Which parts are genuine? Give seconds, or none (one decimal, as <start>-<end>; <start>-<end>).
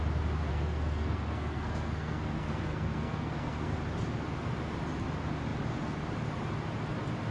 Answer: 0.0-0.5; 3.8-7.3